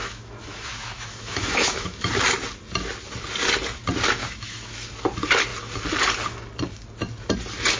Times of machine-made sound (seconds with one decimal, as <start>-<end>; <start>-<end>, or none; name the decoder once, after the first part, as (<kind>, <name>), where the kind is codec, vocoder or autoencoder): 0.0-2.1 (autoencoder, DAC-VAE); 4.2-4.9